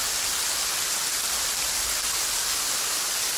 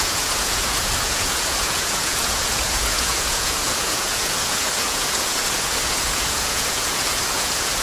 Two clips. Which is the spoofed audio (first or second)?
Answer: second